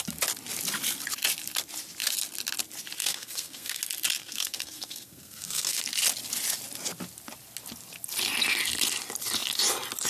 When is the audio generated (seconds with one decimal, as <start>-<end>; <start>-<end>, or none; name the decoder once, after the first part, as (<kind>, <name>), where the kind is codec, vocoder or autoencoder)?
3.0-3.8 (codec, SNAC); 4.2-5.8